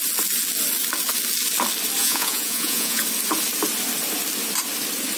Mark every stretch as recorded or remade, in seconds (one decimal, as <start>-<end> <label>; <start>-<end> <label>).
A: 0.0-2.0 recorded; 2.0-3.0 remade; 3.0-5.2 recorded